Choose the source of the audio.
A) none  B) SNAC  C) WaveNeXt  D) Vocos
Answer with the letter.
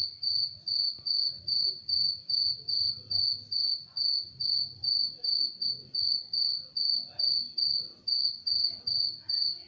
A